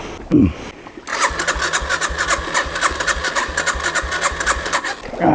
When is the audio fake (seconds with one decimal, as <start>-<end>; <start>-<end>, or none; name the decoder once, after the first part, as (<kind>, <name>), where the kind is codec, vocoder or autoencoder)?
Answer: none